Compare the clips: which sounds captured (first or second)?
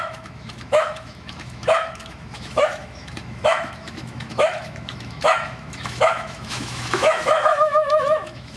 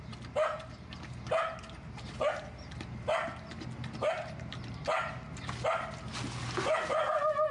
second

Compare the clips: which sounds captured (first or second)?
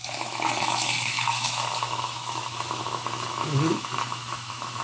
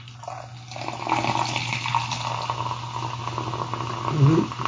second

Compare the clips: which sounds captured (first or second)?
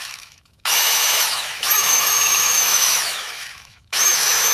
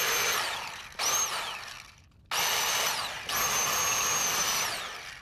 second